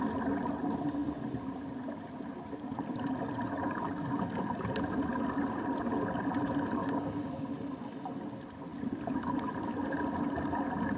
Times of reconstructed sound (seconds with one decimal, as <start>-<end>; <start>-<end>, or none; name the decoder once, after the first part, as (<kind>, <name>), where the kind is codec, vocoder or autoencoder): 6.8-7.5 (codec, DAC)